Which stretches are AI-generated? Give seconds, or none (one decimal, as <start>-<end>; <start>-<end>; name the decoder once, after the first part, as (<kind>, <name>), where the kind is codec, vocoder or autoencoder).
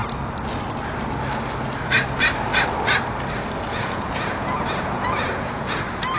3.7-5.8 (vocoder, Vocos)